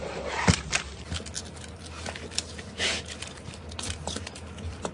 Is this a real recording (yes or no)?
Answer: no